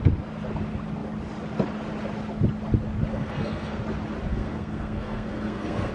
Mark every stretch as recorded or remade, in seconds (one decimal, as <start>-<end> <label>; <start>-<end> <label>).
0.0-3.1 recorded; 3.1-3.8 remade; 3.8-4.3 recorded; 4.3-5.9 remade